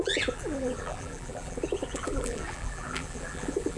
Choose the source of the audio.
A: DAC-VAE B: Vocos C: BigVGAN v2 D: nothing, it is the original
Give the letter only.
C